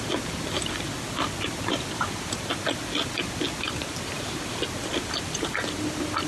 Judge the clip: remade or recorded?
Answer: recorded